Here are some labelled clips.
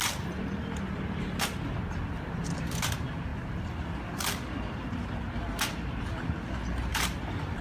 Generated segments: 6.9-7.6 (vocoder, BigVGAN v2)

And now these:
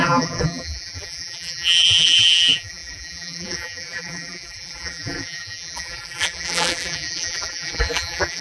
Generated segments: 0.0-8.4 (vocoder, BigVGAN v2)

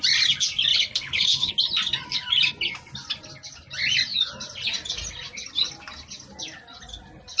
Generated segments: 0.7-1.5 (codec, HILCodec)